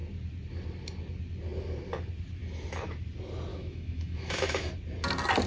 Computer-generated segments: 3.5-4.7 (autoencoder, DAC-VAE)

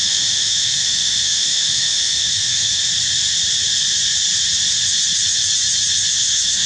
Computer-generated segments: 0.0-2.9 (autoencoder, DAC-VAE); 6.1-6.7

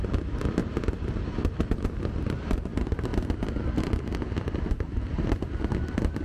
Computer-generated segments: none

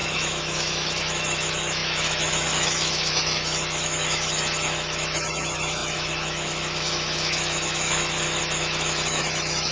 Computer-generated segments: 0.0-9.7 (autoencoder, DAC-VAE)

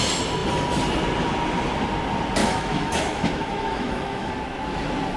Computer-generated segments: 2.4-4.3 (autoencoder, DAC-VAE)

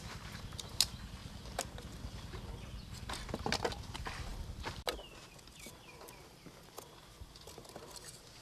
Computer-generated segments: none